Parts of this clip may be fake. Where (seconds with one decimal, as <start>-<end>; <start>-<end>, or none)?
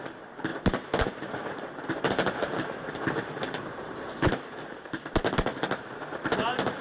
0.5-4.6